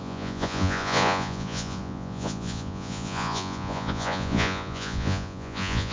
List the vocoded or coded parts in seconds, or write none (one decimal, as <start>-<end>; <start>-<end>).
0.0-5.9

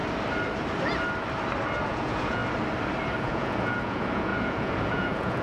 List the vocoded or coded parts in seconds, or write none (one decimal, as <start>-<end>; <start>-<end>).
1.9-2.4; 3.2-5.4